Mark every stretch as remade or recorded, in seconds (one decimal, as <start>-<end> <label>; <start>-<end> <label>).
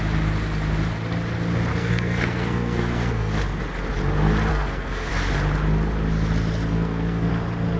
0.0-1.7 recorded; 1.7-3.6 remade; 3.6-4.5 recorded; 4.5-5.1 remade; 5.1-6.7 recorded; 6.7-7.3 remade; 7.3-7.8 recorded